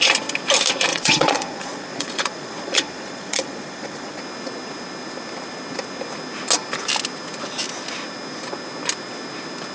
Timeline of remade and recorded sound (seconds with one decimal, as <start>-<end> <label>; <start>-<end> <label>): 0.0-0.9 recorded; 0.9-4.2 remade; 4.2-9.7 recorded